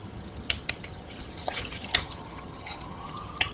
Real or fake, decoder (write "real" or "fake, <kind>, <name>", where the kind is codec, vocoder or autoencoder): fake, vocoder, HiFi-GAN